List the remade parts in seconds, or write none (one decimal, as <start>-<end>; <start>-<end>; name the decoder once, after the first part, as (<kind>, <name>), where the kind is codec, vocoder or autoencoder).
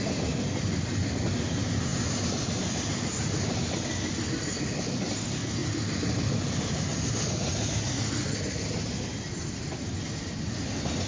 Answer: none